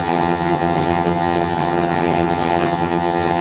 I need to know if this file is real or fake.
fake